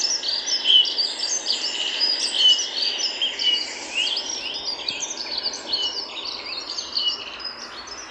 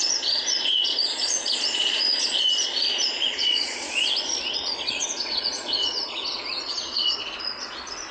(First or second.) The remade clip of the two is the second